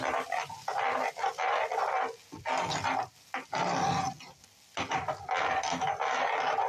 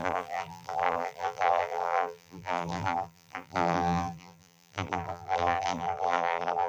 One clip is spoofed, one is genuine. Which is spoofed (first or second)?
second